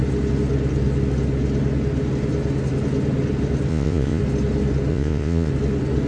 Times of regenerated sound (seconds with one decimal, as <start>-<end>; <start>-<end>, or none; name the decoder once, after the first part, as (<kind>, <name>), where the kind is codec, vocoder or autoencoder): 3.7-4.2 (vocoder, Vocos); 4.9-5.5